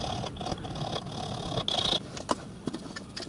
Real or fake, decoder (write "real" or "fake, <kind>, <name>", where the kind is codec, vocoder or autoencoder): real